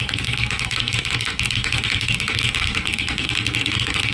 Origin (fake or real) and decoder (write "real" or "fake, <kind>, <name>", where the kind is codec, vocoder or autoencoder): fake, codec, SNAC